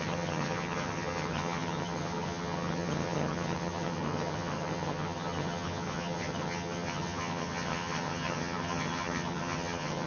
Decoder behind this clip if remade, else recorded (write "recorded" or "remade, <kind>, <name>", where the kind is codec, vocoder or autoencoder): remade, vocoder, HiFi-GAN